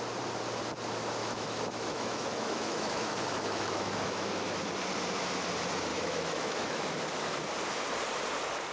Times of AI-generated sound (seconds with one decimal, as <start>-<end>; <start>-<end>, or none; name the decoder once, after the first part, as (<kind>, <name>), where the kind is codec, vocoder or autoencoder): 1.2-4.6 (autoencoder, DAC-VAE); 5.9-6.9

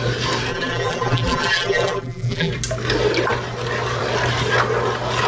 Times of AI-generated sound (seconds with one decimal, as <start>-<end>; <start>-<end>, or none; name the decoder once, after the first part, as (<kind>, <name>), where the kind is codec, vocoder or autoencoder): 0.5-2.5 (vocoder, BigVGAN v2)

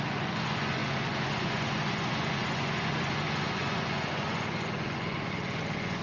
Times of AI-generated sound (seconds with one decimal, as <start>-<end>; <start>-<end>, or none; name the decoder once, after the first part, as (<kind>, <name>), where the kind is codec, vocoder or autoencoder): 0.0-6.0 (vocoder, Vocos)

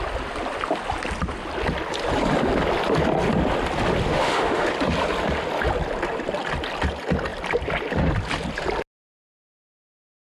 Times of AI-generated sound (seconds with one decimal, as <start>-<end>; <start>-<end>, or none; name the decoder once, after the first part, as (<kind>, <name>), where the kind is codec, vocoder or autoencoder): 4.1-4.7 (autoencoder, DAC-VAE)

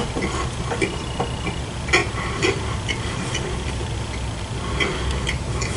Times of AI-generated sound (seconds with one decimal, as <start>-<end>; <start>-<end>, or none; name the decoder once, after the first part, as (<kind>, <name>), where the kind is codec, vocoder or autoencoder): 2.0-3.9 (vocoder, BigVGAN v2)

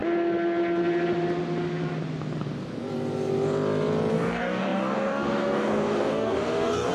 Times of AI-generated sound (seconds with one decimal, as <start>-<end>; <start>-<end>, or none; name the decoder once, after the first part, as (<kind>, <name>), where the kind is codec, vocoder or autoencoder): 4.1-6.9 (codec, DAC)